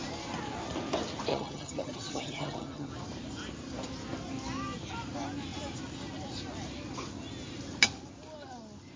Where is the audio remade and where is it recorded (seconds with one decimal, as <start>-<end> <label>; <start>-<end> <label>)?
0.0-1.3 recorded; 1.3-2.9 remade; 2.9-9.0 recorded